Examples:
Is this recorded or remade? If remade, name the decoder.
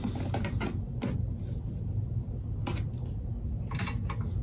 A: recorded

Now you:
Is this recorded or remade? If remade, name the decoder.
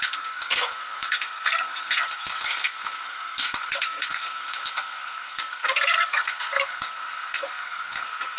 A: remade, codec, SNAC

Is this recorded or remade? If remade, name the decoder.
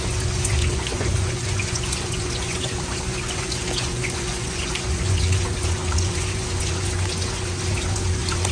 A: remade, vocoder, Vocos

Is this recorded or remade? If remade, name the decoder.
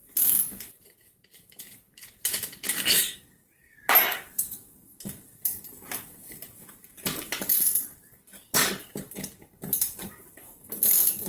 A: remade, codec, DAC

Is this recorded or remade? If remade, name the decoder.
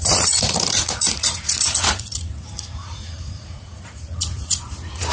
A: remade, vocoder, Vocos